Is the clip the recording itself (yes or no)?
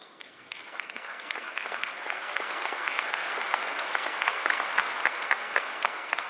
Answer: no